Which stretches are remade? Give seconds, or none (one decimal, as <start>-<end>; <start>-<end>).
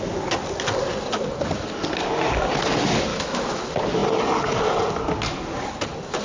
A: 3.1-3.6